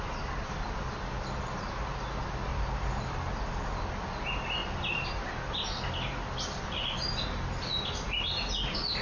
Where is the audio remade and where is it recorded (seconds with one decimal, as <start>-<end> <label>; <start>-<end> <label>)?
0.0-2.5 recorded; 2.5-3.2 remade; 3.2-9.0 recorded